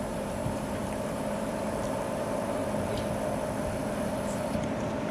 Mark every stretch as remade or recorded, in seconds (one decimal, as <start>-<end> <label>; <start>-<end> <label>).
0.0-2.6 remade; 2.6-4.0 recorded; 4.0-5.1 remade